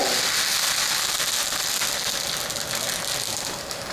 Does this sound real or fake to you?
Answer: real